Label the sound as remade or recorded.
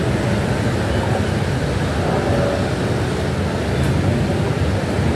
recorded